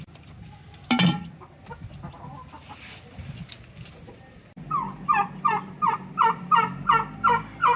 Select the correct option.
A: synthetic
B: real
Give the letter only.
B